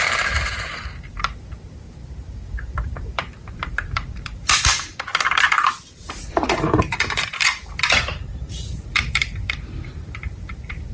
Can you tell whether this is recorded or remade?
remade